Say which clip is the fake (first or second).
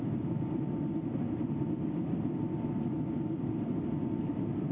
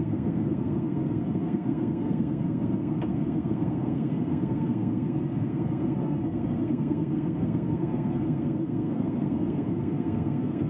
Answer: second